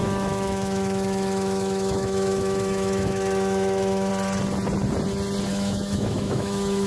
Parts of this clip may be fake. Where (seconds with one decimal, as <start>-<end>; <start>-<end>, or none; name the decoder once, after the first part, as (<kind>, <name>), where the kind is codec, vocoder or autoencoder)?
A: 0.0-4.1 (autoencoder, DAC-VAE); 5.5-6.9